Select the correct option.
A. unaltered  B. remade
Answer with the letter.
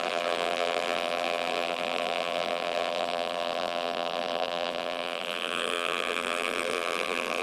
B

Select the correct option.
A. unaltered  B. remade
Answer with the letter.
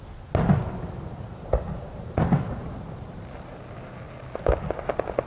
A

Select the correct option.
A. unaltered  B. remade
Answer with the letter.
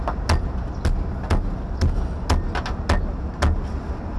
A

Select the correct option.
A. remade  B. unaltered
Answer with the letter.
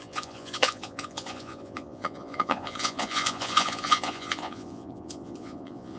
A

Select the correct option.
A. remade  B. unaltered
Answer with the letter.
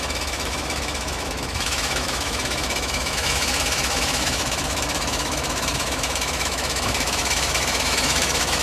A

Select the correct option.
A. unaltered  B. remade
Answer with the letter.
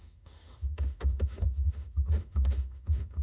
B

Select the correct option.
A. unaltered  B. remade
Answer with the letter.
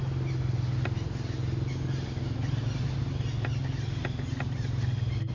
A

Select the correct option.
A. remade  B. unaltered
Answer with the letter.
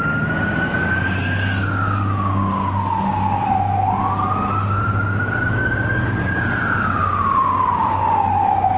A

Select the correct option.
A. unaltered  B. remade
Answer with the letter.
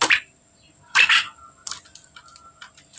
A